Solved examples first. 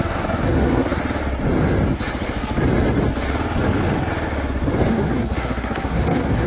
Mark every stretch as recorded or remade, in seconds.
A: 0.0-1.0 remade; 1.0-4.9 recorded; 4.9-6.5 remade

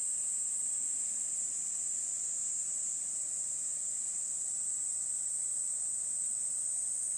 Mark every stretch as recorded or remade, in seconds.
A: 0.0-7.2 recorded

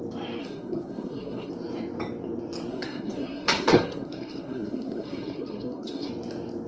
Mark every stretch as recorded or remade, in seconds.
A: 0.0-0.4 recorded; 0.4-1.5 remade; 1.5-2.7 recorded; 2.7-6.1 remade; 6.1-6.7 recorded

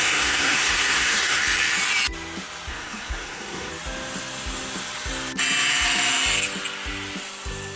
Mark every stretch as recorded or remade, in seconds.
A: 0.0-1.4 remade; 1.4-2.7 recorded; 2.7-3.7 remade; 3.7-7.8 recorded